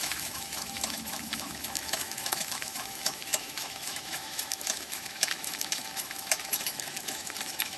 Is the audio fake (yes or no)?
yes